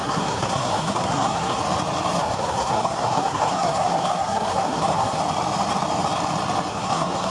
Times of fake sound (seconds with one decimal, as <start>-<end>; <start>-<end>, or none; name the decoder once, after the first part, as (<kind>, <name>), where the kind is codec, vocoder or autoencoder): 0.0-1.6 (codec, SNAC); 2.2-5.2; 6.7-7.3